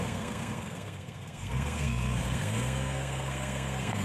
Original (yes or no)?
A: no